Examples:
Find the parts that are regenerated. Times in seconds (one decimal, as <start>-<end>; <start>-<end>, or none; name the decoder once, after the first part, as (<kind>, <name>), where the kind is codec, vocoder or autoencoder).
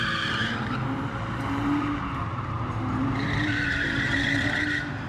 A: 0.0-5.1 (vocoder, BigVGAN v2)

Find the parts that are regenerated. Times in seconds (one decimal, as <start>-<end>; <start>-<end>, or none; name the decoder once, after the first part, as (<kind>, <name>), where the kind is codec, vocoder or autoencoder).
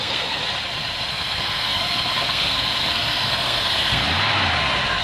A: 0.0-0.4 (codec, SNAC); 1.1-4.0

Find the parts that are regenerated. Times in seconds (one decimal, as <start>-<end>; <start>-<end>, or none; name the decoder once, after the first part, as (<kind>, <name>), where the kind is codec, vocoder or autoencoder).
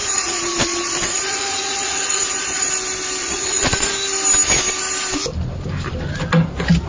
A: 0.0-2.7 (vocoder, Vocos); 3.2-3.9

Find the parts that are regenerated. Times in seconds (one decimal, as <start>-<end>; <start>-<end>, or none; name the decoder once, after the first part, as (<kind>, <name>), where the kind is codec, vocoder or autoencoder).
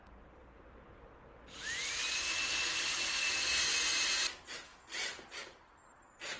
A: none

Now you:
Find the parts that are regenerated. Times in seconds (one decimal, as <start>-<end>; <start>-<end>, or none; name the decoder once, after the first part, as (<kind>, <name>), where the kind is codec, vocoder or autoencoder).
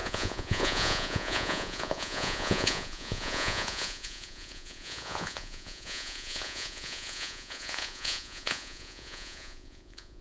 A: 0.0-10.2 (vocoder, Vocos)